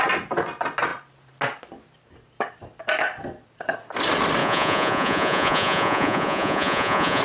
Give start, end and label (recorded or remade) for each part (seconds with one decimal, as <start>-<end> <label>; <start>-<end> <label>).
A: 0.0-4.4 recorded; 4.4-7.2 remade